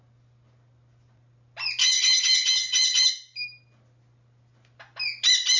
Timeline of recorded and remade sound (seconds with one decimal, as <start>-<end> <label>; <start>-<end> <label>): 0.0-1.8 recorded; 1.8-3.1 remade; 3.1-5.6 recorded